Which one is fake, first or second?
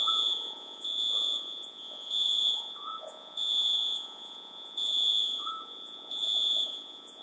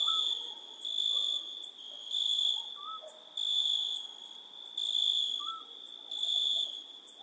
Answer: first